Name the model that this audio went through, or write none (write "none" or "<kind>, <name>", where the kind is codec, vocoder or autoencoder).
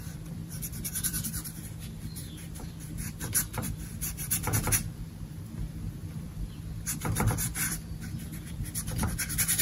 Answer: vocoder, BigVGAN v2